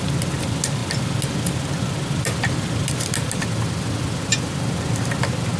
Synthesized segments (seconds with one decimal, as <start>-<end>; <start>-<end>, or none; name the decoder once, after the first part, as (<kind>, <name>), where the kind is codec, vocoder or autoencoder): none